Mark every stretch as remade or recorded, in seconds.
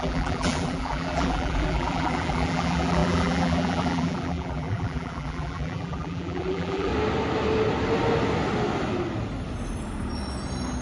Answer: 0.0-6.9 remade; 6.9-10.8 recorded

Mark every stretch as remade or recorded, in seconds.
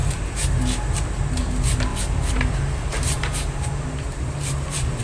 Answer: 0.0-1.9 recorded; 1.9-5.0 remade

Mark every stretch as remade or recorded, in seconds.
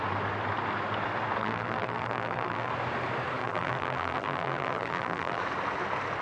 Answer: 0.0-1.4 recorded; 1.4-2.7 remade; 2.7-3.4 recorded; 3.4-5.4 remade; 5.4-6.2 recorded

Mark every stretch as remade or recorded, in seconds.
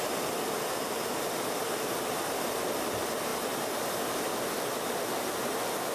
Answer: 0.0-5.9 recorded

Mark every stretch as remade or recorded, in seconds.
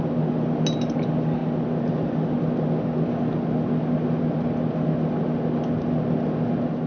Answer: 0.0-6.9 recorded